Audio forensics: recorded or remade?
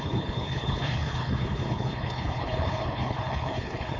remade